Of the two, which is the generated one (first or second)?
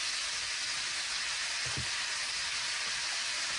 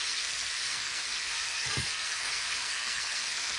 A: second